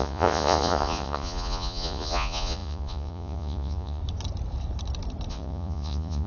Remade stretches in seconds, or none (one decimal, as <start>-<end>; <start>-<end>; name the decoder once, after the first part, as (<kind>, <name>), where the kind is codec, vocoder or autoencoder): 0.0-4.0 (vocoder, Vocos); 5.3-6.3